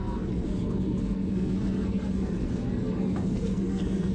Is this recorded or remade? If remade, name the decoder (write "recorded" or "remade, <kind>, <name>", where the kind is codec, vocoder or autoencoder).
remade, codec, SNAC